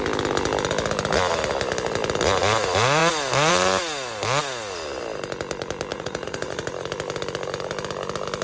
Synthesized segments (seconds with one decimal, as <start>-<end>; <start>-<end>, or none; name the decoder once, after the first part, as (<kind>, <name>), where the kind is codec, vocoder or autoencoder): 5.9-6.7 (vocoder, Vocos)